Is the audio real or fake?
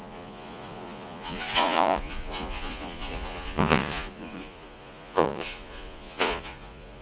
fake